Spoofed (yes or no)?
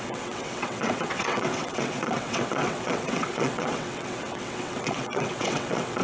yes